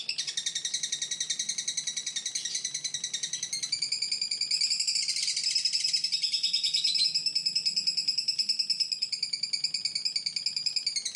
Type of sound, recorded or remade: recorded